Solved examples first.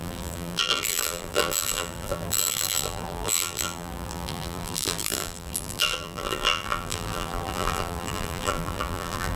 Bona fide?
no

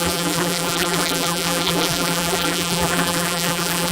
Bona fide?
no